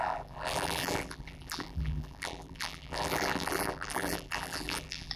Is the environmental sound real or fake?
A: fake